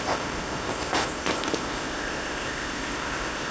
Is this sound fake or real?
fake